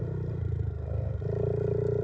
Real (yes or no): yes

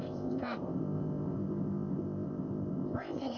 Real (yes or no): no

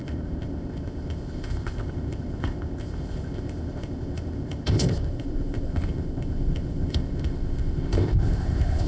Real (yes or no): no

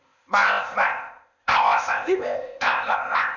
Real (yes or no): no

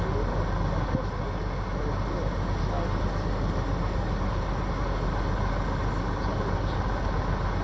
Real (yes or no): yes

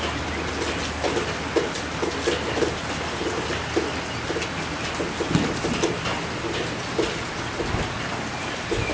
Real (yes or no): yes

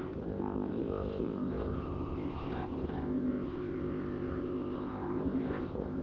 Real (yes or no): no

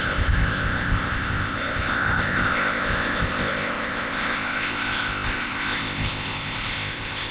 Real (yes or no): no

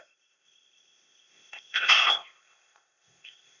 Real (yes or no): no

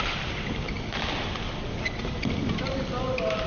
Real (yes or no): yes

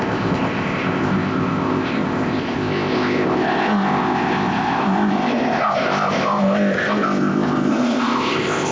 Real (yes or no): no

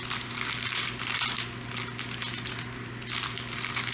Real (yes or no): yes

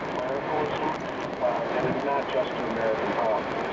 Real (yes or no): yes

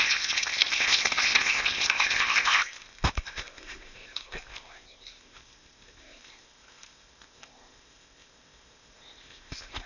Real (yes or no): no